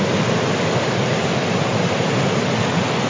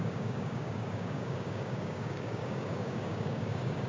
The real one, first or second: first